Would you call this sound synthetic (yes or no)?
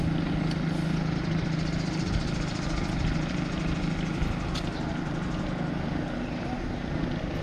no